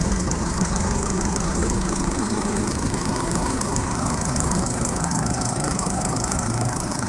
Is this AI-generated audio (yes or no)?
yes